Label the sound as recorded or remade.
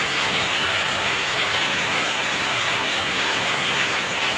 remade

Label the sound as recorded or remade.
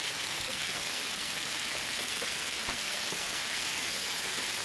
remade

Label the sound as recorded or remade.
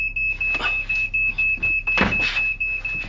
recorded